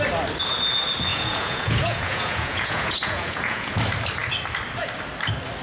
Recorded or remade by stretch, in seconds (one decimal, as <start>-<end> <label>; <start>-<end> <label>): 0.0-1.1 recorded; 1.1-3.8 remade; 3.8-5.6 recorded